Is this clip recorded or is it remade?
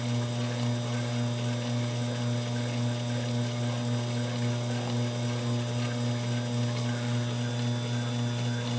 recorded